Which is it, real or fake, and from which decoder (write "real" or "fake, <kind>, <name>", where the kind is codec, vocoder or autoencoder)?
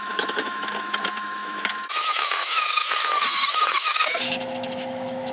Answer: fake, autoencoder, DAC-VAE